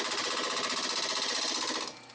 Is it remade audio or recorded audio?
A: recorded